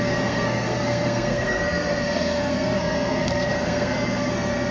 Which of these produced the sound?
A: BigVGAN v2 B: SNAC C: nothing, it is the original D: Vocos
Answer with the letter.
B